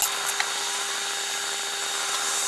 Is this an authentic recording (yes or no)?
yes